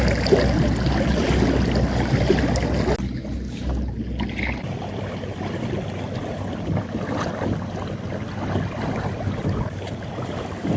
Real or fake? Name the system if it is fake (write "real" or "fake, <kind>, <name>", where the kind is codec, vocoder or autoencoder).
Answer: real